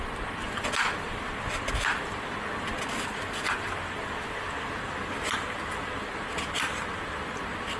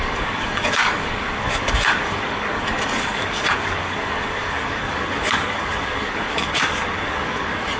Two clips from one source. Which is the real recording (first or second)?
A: first